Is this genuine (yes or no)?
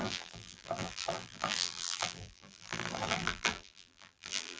no